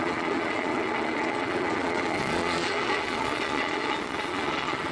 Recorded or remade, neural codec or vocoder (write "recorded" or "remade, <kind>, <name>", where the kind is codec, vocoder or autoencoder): remade, vocoder, Vocos